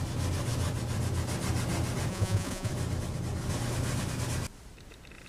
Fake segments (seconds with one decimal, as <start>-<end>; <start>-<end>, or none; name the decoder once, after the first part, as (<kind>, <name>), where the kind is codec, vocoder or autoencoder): 2.1-2.7 (vocoder, Vocos)